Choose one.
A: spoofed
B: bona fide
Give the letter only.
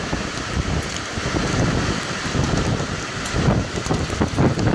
B